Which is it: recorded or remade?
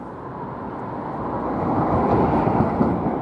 recorded